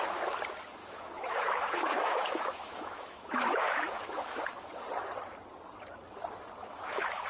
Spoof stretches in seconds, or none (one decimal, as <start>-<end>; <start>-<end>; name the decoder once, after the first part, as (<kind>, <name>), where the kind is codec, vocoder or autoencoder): 0.8-4.4 (autoencoder, DAC-VAE); 6.6-7.3